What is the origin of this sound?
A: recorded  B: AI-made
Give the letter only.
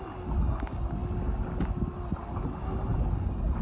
A